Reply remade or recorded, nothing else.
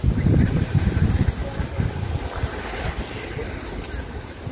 recorded